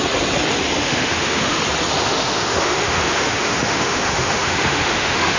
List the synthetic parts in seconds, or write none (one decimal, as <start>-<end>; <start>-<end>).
0.8-1.6; 2.0-5.4